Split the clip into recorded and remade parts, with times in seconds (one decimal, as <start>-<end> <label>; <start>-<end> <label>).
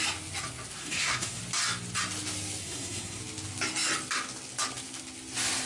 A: 0.0-0.8 recorded; 0.8-1.4 remade; 1.4-2.6 recorded; 2.6-3.2 remade; 3.2-5.7 recorded